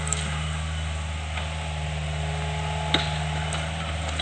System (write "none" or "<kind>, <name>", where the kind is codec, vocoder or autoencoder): none